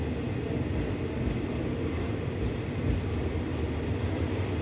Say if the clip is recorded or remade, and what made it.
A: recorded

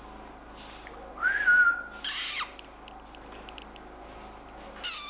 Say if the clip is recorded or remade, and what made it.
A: recorded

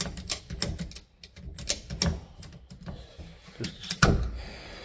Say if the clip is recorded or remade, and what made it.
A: recorded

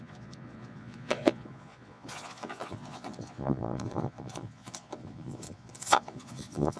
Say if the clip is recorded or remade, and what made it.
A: remade, vocoder, Vocos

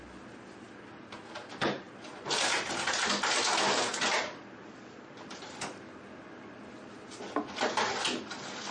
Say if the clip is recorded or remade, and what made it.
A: recorded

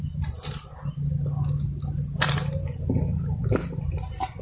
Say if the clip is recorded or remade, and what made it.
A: recorded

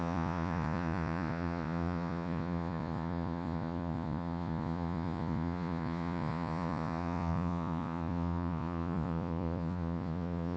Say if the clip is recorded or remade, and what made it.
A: remade, vocoder, Vocos